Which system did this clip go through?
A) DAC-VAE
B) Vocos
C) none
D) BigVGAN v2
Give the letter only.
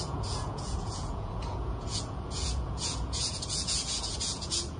B